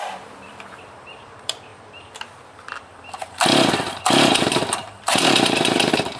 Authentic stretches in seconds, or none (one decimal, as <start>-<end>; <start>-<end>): 1.7-4.1